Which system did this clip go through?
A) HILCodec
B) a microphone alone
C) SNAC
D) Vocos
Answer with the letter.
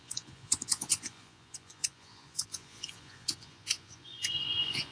D